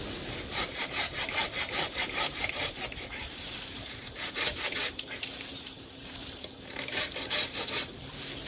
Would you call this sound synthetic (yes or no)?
yes